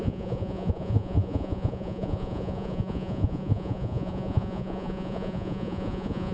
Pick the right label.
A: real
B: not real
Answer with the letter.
B